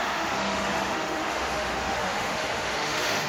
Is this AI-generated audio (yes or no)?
yes